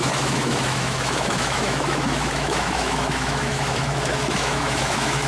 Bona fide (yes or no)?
no